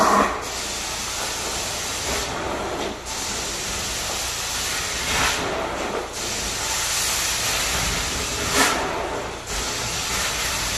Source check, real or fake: real